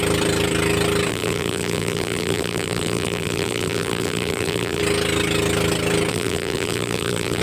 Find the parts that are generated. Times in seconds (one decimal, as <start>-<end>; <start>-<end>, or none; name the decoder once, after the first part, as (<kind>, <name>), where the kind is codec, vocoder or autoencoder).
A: 1.1-4.8 (vocoder, BigVGAN v2); 6.1-7.4

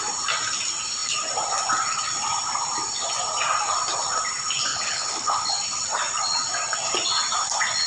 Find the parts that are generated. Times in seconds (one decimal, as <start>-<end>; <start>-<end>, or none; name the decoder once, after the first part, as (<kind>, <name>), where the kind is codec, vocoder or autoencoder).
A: 4.7-5.5 (codec, HILCodec)

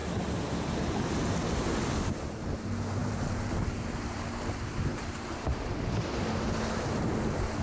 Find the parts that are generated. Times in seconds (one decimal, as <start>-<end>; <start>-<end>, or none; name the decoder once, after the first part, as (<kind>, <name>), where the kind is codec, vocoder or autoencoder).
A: 3.0-3.6 (vocoder, BigVGAN v2); 4.9-5.8

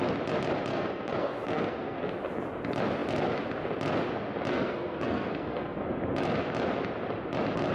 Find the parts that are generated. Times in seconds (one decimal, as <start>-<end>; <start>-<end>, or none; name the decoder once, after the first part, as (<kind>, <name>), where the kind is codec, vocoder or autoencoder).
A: 0.7-2.1 (codec, SNAC); 4.5-5.9

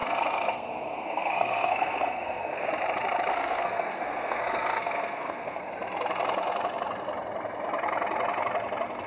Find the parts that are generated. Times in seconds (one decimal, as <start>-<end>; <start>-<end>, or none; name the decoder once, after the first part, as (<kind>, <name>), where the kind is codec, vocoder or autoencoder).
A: 0.0-2.7 (codec, SNAC); 3.3-5.6